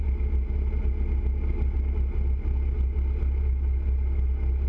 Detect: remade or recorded recorded